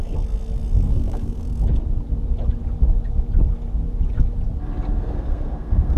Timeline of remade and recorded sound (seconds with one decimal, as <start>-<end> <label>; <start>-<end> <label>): 0.0-0.9 recorded; 0.9-1.4 remade; 1.4-5.0 recorded; 5.0-6.0 remade

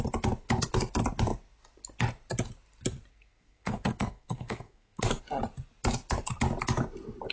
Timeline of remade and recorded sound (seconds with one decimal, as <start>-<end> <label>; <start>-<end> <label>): 0.0-3.1 recorded; 3.1-5.0 remade; 5.0-7.3 recorded

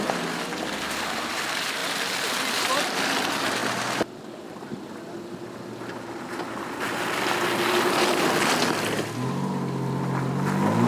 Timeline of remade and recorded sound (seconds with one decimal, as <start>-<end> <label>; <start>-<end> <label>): 0.0-1.8 recorded; 1.8-2.7 remade; 2.7-10.9 recorded